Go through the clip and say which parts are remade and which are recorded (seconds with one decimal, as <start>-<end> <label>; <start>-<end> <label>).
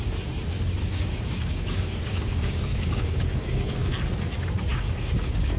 0.0-0.8 recorded; 0.8-3.9 remade; 3.9-4.7 recorded; 4.7-5.6 remade